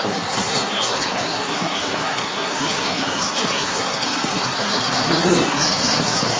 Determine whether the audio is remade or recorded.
remade